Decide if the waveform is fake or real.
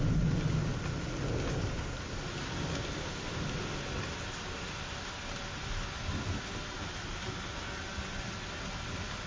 real